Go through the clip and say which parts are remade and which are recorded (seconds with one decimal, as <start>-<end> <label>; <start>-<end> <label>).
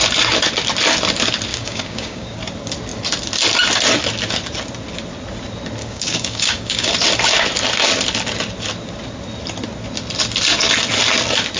0.0-1.5 recorded; 1.5-2.4 remade; 2.4-5.8 recorded; 5.8-6.9 remade; 6.9-11.6 recorded